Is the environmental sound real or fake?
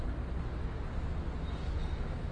real